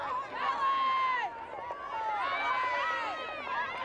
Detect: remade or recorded recorded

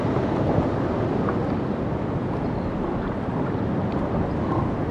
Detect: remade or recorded recorded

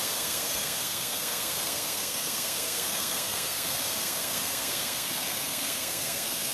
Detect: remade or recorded remade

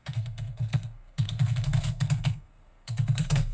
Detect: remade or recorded remade